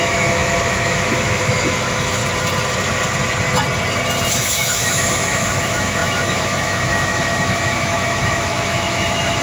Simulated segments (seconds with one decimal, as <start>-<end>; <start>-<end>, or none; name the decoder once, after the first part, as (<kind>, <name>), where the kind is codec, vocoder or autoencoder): 0.0-2.2 (autoencoder, DAC-VAE); 4.3-9.4